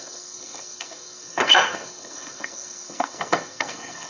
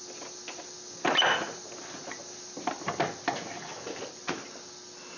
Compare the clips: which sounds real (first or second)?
second